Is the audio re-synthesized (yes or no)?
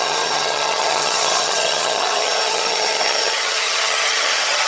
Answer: yes